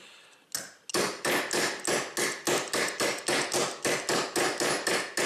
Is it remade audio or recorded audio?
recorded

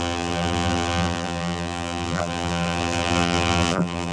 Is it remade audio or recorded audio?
remade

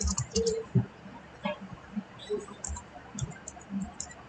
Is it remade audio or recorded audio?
remade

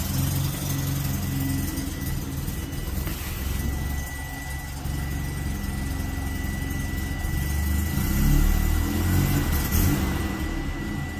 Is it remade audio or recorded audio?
recorded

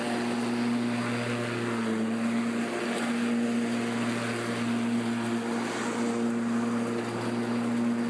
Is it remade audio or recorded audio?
recorded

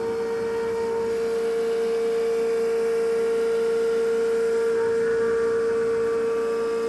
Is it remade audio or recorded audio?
recorded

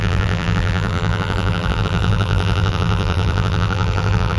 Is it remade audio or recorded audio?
remade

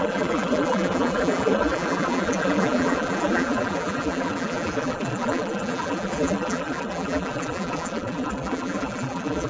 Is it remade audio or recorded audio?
remade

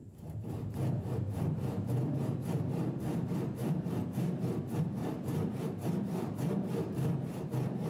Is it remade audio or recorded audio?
remade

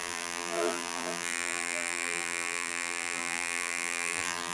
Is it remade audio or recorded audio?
remade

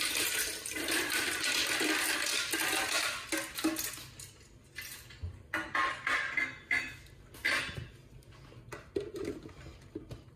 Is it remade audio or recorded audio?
recorded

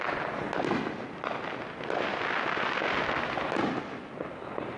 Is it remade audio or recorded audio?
recorded